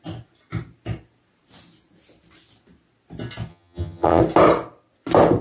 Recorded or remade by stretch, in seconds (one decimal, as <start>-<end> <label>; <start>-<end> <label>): 0.0-3.5 recorded; 3.5-4.2 remade; 4.2-5.4 recorded